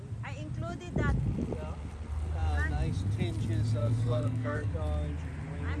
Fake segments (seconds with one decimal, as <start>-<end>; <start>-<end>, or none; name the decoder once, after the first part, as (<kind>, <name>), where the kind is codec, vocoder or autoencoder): 3.8-4.7 (codec, SNAC)